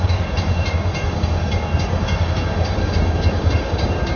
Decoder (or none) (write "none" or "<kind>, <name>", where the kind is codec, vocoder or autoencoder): codec, DAC